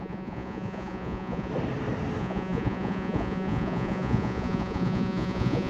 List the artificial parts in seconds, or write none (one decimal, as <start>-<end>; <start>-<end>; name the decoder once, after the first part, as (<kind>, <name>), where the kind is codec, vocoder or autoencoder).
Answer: 0.0-1.5 (vocoder, Vocos); 2.2-5.7